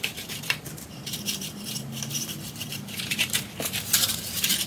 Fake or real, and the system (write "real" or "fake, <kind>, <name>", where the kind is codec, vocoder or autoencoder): fake, vocoder, BigVGAN v2